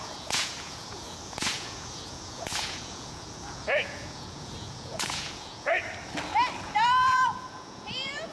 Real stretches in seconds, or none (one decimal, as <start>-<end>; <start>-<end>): 5.7-6.6